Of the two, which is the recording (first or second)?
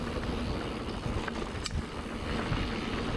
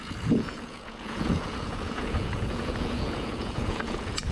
first